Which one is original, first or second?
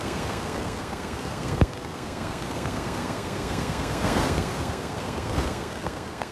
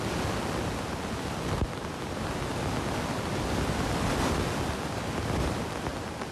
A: second